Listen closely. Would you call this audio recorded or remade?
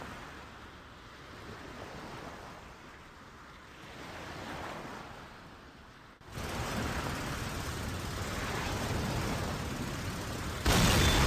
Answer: recorded